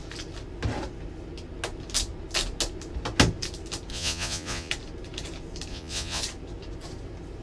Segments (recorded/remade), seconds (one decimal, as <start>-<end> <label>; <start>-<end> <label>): 0.0-3.9 recorded; 3.9-4.7 remade; 4.7-5.7 recorded; 5.7-6.2 remade; 6.2-7.4 recorded